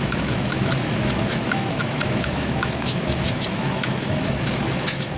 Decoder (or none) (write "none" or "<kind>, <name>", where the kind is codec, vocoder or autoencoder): autoencoder, DAC-VAE